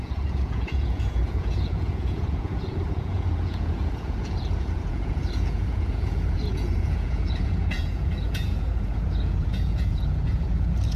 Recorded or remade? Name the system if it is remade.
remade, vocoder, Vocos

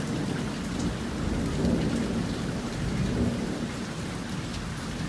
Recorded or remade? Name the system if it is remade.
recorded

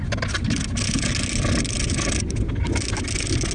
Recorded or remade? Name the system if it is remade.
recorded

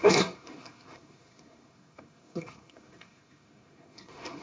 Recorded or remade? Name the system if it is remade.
remade, codec, SNAC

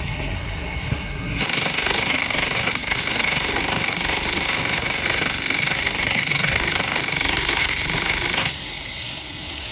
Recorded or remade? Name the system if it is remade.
remade, codec, SNAC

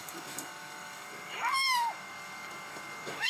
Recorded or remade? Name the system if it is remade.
remade, codec, DAC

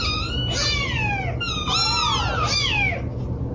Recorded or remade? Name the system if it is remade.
recorded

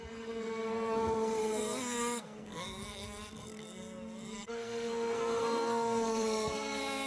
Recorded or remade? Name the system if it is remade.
remade, codec, SNAC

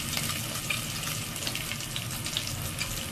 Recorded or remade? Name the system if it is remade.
recorded